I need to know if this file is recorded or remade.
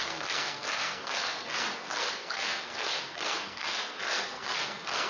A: remade